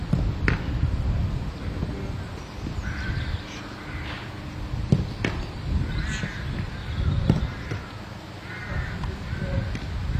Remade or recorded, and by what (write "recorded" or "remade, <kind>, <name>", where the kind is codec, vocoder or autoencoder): recorded